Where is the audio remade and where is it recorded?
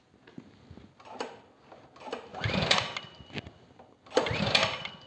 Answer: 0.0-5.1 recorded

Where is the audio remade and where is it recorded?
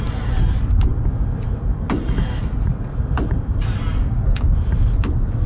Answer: 0.0-5.5 recorded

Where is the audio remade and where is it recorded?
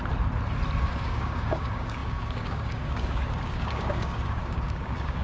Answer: 0.0-0.8 recorded; 0.8-5.2 remade